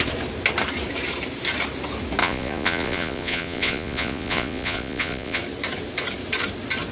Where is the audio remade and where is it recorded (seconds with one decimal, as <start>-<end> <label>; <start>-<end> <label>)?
0.0-2.2 recorded; 2.2-5.4 remade; 5.4-6.9 recorded